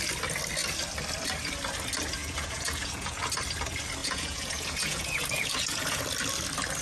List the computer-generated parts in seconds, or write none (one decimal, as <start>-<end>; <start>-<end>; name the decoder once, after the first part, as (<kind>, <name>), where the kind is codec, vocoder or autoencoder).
2.2-3.2 (vocoder, Vocos); 4.0-6.0

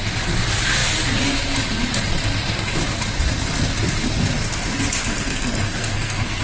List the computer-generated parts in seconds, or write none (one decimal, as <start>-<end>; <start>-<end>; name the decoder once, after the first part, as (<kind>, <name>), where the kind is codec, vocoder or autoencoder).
5.0-6.4 (codec, SNAC)

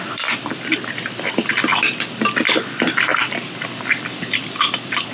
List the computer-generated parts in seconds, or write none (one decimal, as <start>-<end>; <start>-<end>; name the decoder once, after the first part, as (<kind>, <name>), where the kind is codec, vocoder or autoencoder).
0.0-1.7 (vocoder, BigVGAN v2); 2.6-5.1

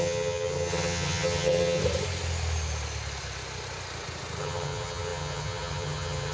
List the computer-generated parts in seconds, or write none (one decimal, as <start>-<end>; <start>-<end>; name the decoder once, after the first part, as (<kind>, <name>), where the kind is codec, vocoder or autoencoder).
0.0-1.8 (vocoder, HiFi-GAN); 4.4-6.3

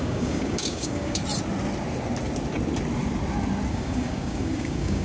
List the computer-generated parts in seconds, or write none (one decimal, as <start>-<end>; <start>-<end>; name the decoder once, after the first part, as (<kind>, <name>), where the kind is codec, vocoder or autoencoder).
0.0-1.2 (codec, DAC); 3.7-5.0

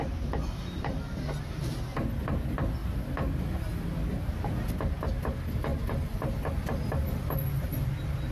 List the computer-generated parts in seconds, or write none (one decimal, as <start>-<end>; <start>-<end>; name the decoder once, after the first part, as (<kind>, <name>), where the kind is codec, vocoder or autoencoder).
5.7-6.4 (vocoder, BigVGAN v2)

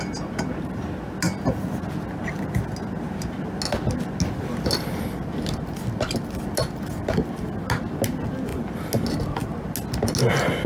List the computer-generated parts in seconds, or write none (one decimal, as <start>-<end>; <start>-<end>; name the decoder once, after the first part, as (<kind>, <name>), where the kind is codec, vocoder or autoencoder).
none